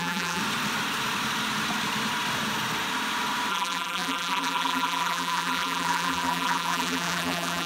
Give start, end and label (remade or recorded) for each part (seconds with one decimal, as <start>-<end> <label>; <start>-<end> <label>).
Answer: 0.0-0.4 remade; 0.4-3.5 recorded; 3.5-7.7 remade